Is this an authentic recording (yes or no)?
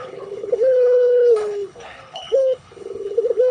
no